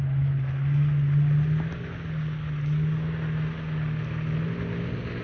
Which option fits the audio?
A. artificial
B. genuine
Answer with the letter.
B